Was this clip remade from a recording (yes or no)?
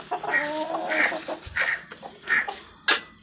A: no